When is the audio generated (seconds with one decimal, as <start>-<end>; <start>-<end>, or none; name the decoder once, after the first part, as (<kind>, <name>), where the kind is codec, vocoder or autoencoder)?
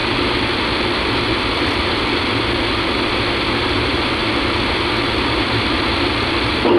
3.6-4.2 (vocoder, BigVGAN v2)